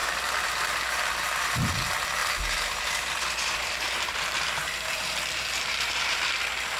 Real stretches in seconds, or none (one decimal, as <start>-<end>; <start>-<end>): 1.7-2.2; 6.3-6.8